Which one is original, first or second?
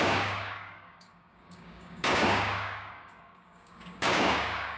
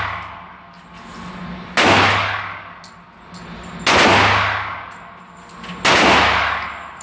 second